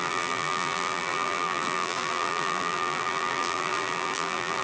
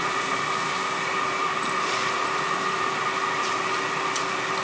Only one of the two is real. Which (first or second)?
second